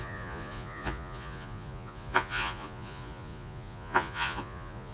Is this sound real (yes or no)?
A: no